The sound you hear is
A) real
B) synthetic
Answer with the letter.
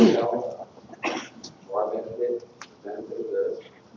A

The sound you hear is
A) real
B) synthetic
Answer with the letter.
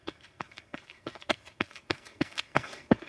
B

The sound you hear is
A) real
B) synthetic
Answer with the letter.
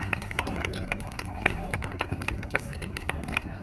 B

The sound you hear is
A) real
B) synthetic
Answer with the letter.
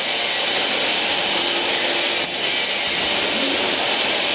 A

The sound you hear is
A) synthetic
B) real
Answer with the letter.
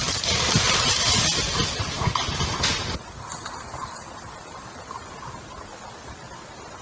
B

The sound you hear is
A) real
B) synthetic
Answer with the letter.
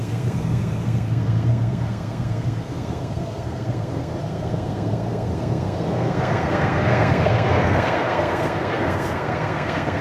B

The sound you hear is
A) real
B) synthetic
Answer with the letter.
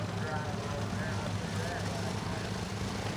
A